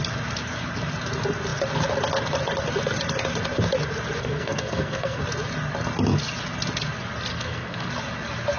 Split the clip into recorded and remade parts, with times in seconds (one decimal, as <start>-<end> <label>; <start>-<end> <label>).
0.0-4.2 recorded; 4.2-5.2 remade; 5.2-7.3 recorded; 7.3-7.9 remade; 7.9-8.6 recorded